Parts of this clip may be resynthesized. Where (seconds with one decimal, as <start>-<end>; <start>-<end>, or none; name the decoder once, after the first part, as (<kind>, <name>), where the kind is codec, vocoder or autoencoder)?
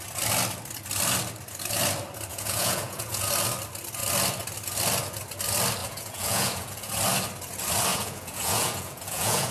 2.3-3.3 (vocoder, Vocos); 5.8-6.9; 7.9-9.5